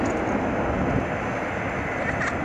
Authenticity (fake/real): real